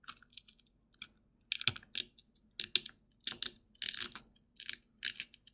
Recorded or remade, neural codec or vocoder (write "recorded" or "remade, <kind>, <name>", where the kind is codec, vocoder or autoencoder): recorded